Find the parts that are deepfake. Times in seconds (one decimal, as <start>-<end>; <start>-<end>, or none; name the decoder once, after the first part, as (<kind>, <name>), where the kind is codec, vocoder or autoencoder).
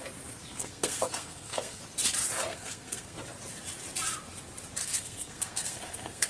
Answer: 0.4-1.8 (codec, SNAC); 2.5-3.2; 4.8-6.3